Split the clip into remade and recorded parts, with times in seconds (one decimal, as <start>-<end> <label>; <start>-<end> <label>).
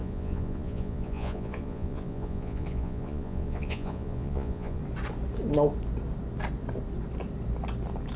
0.0-4.8 remade; 4.8-8.2 recorded